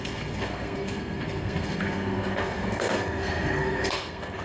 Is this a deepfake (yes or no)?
yes